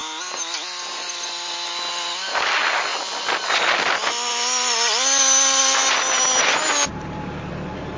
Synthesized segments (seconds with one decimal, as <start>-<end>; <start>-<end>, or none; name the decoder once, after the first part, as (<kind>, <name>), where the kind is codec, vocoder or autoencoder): 6.9-7.5 (vocoder, BigVGAN v2)